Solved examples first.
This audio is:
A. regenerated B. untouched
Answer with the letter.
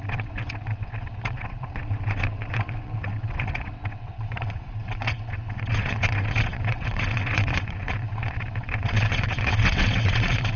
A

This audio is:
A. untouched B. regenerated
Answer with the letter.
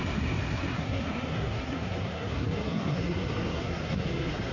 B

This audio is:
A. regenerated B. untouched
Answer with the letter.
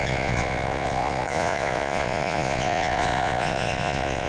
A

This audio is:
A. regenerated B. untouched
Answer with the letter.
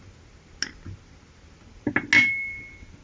B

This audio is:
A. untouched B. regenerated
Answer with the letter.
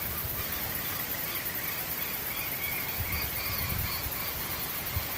A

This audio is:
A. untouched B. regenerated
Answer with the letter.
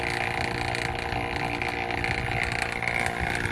A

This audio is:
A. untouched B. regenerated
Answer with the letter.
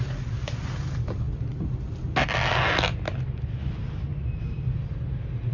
A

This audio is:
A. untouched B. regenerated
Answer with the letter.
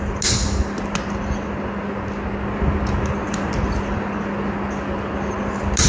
A